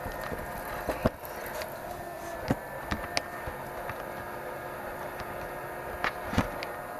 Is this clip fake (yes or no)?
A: no